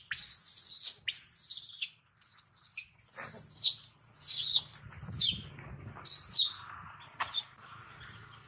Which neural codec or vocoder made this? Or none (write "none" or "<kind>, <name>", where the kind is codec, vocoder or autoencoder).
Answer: none